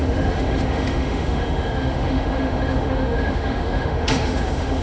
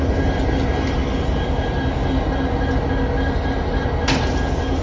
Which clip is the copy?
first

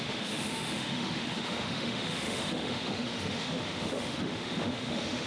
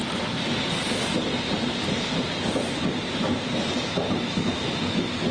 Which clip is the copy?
first